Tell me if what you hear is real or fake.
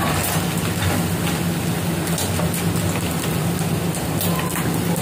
real